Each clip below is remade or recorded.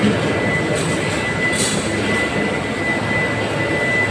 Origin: recorded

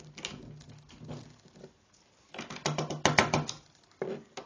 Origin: recorded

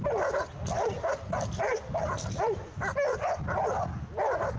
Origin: recorded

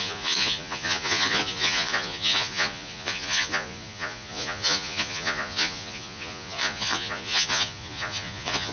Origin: remade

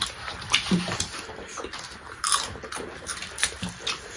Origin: recorded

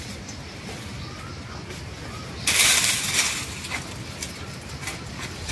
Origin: recorded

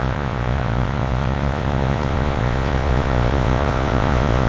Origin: remade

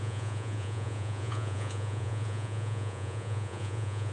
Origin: remade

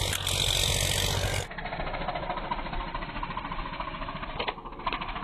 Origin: recorded